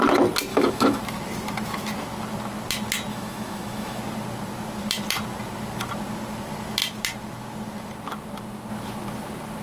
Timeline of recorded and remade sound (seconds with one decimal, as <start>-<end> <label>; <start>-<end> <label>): 0.0-0.5 recorded; 0.5-1.0 remade; 1.0-3.1 recorded; 3.1-4.0 remade; 4.0-9.6 recorded